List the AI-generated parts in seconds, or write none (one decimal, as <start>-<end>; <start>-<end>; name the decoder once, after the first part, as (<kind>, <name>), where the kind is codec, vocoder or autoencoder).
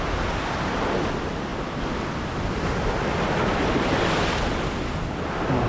none